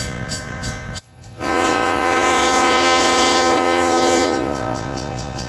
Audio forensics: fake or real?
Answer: fake